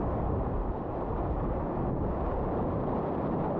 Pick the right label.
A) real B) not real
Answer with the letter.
A